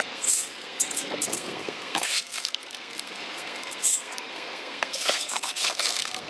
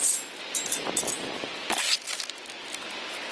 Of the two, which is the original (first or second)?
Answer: second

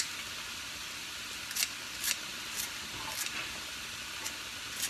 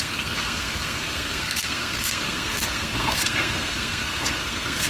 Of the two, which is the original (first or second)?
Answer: first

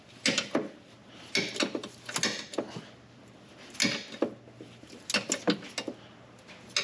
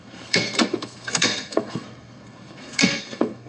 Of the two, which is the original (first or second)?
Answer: first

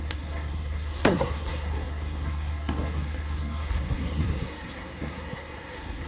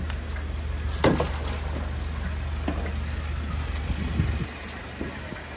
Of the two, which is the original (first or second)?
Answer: second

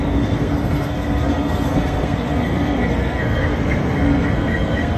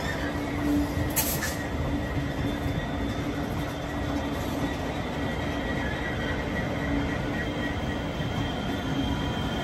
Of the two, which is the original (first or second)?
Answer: second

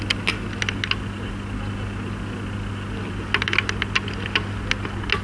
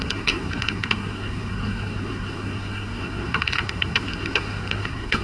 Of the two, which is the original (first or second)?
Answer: first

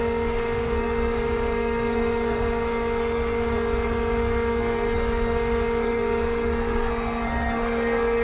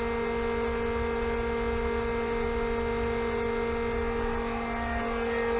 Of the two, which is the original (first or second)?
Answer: second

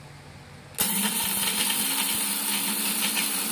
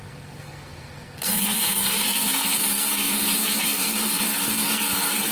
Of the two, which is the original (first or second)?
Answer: first